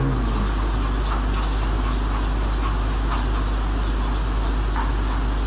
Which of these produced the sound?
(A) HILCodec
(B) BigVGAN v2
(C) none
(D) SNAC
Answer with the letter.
C